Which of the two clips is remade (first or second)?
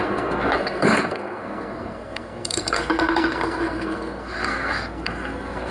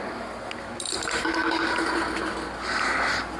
first